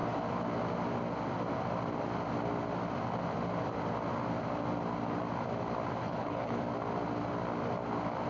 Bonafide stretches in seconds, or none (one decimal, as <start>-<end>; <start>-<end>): 0.0-6.0; 6.6-8.3